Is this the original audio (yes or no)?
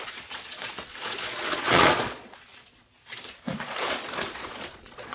no